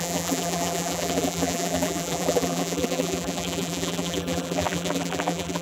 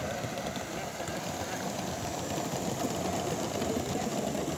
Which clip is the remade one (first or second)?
first